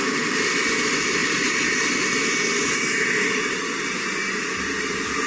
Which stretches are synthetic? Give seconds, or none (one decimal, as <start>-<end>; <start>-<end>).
none